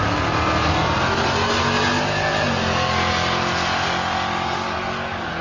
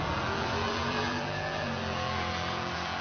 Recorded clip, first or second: first